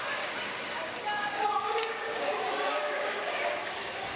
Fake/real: fake